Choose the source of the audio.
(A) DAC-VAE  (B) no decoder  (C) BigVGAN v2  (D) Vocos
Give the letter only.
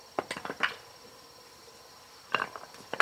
B